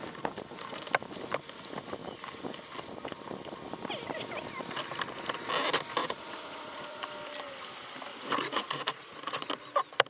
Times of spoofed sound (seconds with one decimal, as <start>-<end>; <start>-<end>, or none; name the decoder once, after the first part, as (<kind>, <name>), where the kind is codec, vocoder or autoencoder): 6.0-7.0 (vocoder, Vocos); 8.1-9.5